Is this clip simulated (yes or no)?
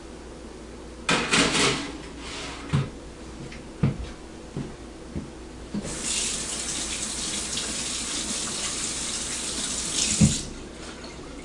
no